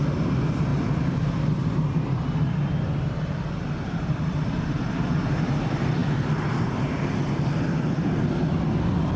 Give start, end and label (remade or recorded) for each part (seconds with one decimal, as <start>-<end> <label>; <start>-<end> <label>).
0.0-9.2 recorded